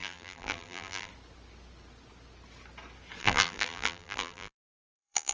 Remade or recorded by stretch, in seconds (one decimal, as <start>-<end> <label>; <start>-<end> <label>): 0.0-1.1 remade; 1.1-3.2 recorded; 3.2-5.3 remade